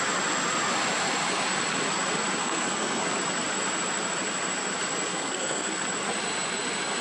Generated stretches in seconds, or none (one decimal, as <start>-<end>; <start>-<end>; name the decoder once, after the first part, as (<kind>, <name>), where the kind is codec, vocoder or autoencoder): 2.4-3.1 (codec, SNAC); 5.1-5.8